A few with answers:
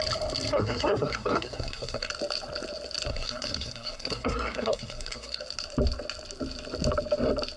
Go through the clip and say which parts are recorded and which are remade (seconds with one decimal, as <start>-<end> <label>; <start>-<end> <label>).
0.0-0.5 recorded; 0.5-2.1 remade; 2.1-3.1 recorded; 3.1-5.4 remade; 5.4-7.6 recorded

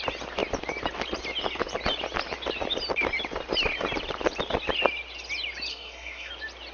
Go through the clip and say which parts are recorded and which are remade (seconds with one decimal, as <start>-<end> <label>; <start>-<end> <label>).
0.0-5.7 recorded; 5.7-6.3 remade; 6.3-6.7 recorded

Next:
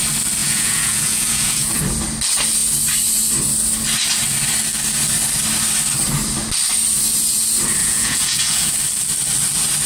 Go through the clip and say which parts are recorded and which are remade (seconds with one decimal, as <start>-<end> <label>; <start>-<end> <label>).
0.0-0.4 recorded; 0.4-1.8 remade; 1.8-7.8 recorded; 7.8-8.7 remade; 8.7-9.9 recorded